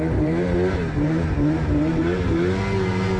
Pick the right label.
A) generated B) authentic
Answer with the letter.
A